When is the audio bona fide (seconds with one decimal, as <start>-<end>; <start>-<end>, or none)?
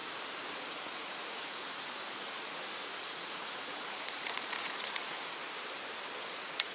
0.0-0.7; 5.4-6.2